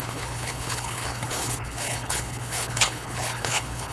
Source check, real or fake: fake